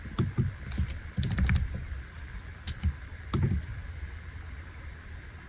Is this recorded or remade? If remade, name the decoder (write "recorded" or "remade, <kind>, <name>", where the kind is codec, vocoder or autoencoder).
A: recorded